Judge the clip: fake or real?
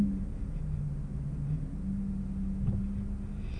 real